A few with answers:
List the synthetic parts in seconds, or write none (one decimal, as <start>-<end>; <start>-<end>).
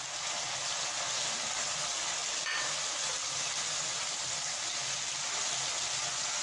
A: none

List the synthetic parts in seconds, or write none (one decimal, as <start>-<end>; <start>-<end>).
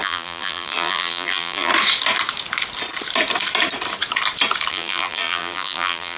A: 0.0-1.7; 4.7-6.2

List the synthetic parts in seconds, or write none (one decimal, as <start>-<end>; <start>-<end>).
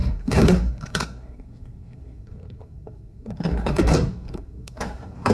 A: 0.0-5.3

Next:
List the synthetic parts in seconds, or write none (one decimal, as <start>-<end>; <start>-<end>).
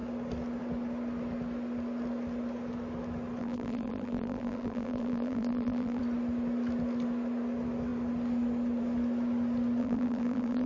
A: 3.4-6.0; 9.8-10.7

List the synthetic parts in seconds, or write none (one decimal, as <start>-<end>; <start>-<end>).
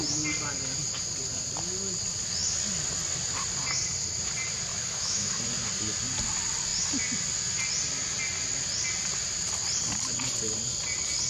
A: 4.7-5.3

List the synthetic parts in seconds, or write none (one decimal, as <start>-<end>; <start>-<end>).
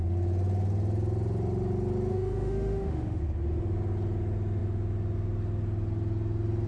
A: 2.1-3.2